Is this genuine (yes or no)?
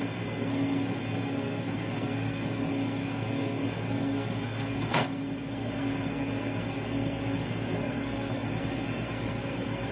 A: no